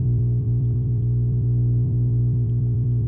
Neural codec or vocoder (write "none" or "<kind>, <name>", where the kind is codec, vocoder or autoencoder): vocoder, BigVGAN v2